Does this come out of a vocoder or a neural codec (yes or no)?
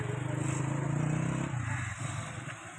no